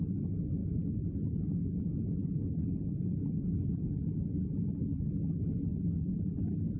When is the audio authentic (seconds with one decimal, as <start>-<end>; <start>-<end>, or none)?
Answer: 0.0-6.8